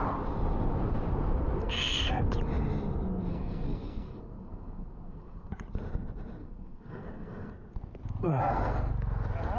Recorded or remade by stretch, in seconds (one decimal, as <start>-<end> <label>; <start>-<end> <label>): 0.0-1.6 recorded; 1.6-2.2 remade; 2.2-3.3 recorded; 3.3-5.5 remade; 5.5-6.4 recorded; 6.4-7.5 remade; 7.5-8.2 recorded; 8.2-8.9 remade; 8.9-9.6 recorded